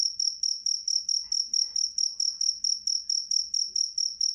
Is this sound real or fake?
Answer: real